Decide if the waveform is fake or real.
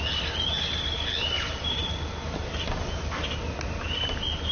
real